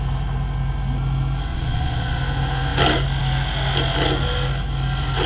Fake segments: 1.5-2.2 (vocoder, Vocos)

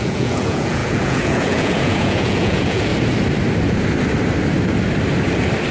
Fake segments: 0.0-2.9 (vocoder, Vocos)